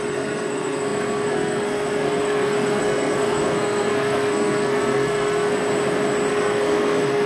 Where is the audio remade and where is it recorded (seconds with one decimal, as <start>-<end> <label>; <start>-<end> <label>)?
0.0-5.6 remade; 5.6-6.3 recorded; 6.3-7.3 remade